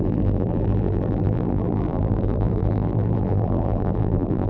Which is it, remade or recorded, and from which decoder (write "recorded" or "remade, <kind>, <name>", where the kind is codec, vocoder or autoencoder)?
remade, vocoder, BigVGAN v2